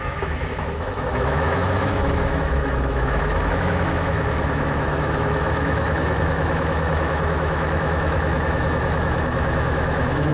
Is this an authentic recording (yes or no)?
no